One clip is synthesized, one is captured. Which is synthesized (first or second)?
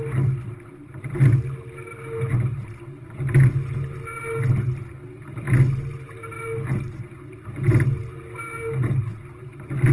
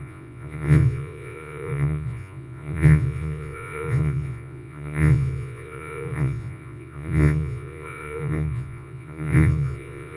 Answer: second